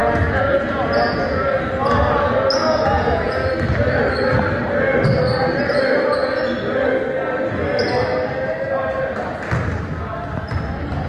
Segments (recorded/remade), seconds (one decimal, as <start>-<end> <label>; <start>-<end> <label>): 0.0-1.6 remade; 1.6-2.6 recorded; 2.6-3.5 remade; 3.5-11.1 recorded